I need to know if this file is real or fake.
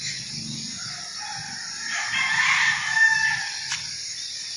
real